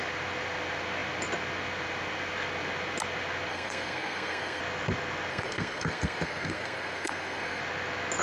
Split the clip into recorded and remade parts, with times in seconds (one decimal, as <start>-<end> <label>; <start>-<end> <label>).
0.0-3.5 recorded; 3.5-4.6 remade; 4.6-5.3 recorded; 5.3-7.6 remade; 7.6-8.2 recorded